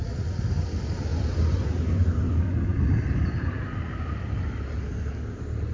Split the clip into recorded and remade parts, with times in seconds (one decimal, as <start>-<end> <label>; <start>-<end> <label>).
0.0-2.7 recorded; 2.7-3.5 remade; 3.5-5.7 recorded